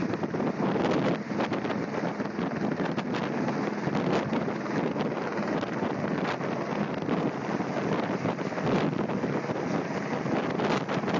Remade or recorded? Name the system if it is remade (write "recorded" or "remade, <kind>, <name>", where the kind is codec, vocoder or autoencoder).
recorded